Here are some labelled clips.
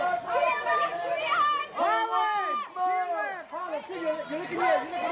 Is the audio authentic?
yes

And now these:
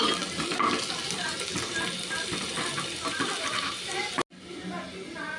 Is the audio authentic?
yes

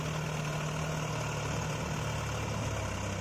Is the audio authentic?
yes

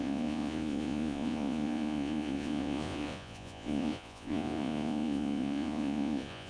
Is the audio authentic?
no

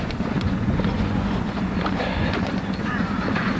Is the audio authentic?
no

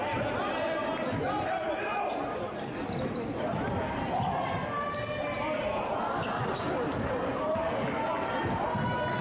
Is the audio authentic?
yes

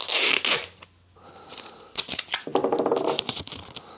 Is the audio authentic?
yes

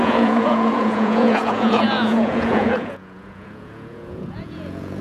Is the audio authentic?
no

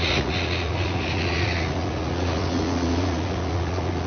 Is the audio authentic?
no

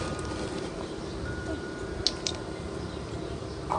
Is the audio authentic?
yes